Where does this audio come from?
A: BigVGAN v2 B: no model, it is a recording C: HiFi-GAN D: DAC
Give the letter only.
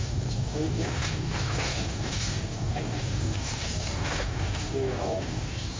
D